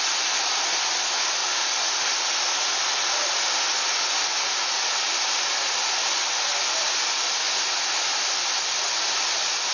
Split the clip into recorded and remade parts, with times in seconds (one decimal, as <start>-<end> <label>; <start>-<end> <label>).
0.0-9.7 recorded